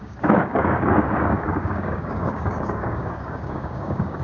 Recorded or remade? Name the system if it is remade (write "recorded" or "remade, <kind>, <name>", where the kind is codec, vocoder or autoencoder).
remade, codec, DAC